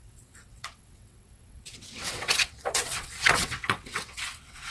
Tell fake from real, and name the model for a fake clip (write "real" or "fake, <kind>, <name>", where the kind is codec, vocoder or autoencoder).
fake, vocoder, WaveNeXt